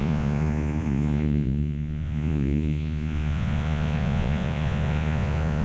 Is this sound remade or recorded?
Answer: remade